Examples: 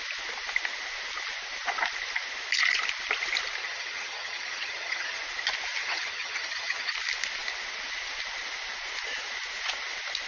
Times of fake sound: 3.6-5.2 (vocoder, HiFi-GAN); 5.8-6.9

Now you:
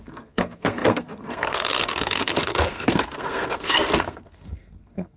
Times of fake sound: 0.0-5.2 (codec, SNAC)

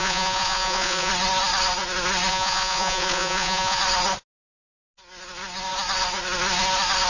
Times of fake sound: 0.0-1.1 (vocoder, Vocos); 2.3-3.8

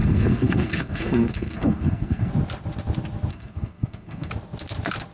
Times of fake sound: 0.0-2.3 (codec, SNAC); 3.3-4.3

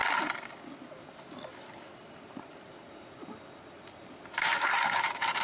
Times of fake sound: none

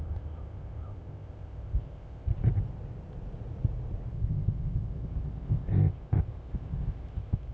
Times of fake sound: 0.0-2.3 (codec, ZipCodec); 4.1-7.5

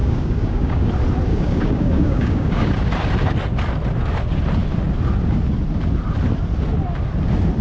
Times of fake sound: 0.0-0.9 (codec, DAC); 1.3-2.7